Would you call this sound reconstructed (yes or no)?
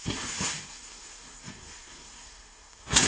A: yes